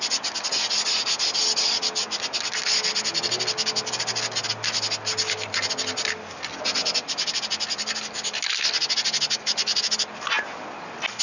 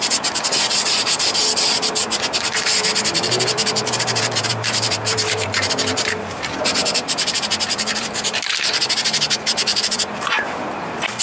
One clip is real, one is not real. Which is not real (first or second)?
second